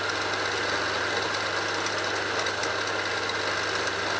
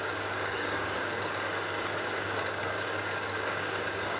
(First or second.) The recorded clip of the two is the first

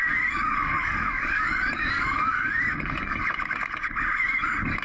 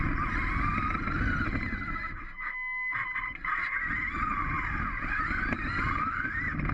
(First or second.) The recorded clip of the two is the second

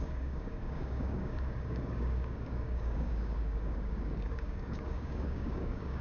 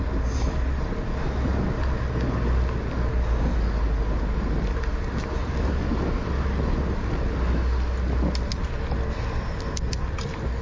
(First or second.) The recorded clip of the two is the second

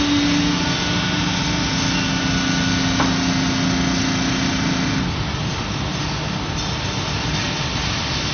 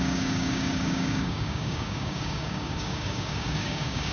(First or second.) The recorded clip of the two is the first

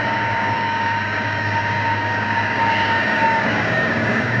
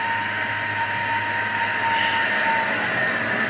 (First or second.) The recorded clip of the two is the second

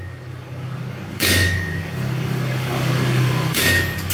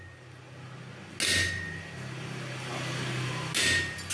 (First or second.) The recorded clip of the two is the second